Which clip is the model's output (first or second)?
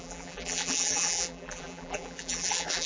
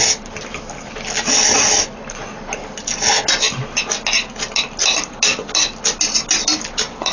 first